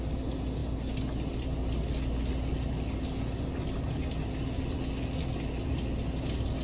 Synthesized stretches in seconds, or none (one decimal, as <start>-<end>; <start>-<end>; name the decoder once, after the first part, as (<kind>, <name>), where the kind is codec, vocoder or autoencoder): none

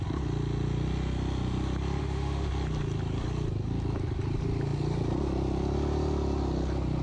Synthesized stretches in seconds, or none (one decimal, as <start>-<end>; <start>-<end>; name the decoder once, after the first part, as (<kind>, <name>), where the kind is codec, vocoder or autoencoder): 2.0-2.5 (autoencoder, DAC-VAE)

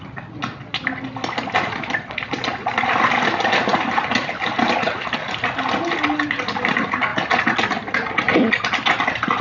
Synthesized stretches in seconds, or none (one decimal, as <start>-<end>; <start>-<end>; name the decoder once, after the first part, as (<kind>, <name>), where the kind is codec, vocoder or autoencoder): none

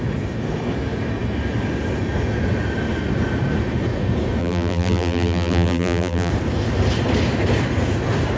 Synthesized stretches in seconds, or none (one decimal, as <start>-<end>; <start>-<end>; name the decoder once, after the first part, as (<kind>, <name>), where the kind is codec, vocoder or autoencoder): 4.4-6.3 (vocoder, BigVGAN v2)

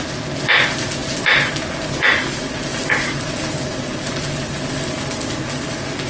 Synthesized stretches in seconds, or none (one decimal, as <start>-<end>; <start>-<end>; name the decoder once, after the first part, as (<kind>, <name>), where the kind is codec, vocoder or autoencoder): none